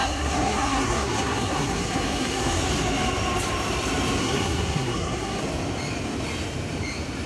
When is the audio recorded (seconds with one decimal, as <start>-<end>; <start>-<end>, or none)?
2.6-4.2; 5.4-7.3